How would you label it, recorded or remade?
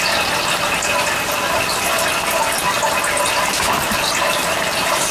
recorded